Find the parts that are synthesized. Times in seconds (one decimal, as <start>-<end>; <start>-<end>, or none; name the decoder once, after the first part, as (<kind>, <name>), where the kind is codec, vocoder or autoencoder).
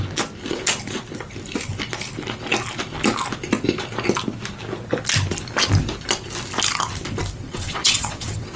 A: 7.4-8.6 (vocoder, WaveNeXt)